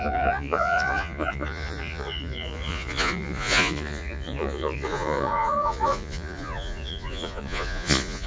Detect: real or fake fake